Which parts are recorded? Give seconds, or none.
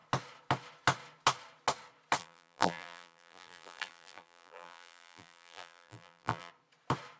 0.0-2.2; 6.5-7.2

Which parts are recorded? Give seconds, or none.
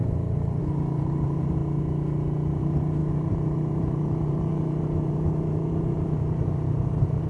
0.0-0.6; 1.6-2.6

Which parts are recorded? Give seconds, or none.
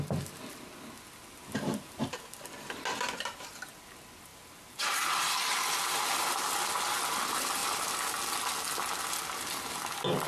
0.0-4.3; 5.3-10.3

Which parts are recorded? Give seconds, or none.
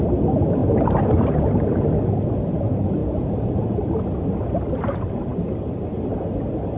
0.0-0.6; 1.6-3.0; 3.9-6.8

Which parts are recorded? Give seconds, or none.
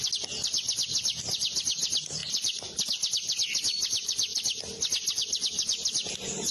0.0-6.5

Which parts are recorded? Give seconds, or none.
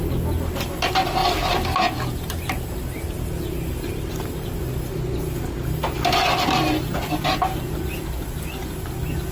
0.0-9.3